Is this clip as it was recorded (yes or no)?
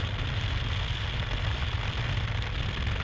yes